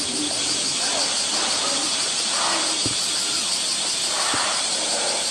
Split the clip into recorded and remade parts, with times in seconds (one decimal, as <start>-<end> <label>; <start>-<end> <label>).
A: 0.0-5.3 remade